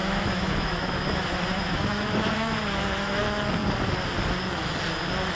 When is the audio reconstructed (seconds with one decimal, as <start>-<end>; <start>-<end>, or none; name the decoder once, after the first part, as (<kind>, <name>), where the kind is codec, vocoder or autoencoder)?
0.0-3.2 (autoencoder, DAC-VAE)